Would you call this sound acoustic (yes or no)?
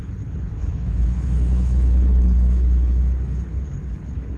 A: no